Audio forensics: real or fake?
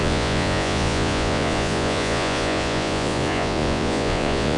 fake